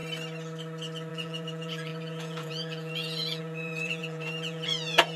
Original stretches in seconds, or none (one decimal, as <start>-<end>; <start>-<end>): 0.0-1.1